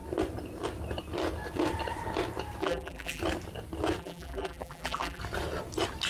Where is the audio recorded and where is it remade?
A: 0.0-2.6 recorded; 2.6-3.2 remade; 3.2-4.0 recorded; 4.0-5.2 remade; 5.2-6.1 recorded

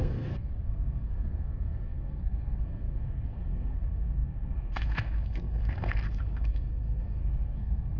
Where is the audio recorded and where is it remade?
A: 0.0-8.0 remade